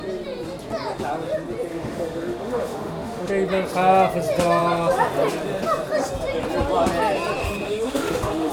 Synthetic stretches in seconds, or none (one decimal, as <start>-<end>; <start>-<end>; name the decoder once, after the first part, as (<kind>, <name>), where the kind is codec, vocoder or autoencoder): 1.7-3.3 (autoencoder, DAC-VAE); 7.4-8.5